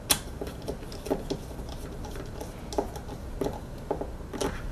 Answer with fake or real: real